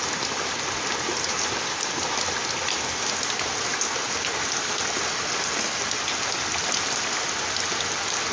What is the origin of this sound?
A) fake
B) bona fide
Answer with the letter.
B